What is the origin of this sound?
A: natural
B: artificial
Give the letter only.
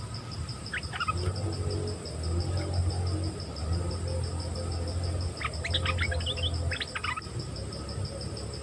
A